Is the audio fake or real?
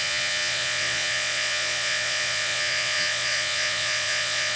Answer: fake